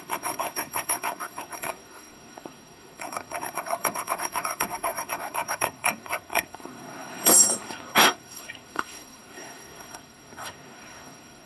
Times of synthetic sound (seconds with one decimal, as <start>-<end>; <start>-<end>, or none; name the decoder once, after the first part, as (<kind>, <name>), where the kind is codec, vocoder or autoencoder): 0.0-11.5 (codec, SNAC)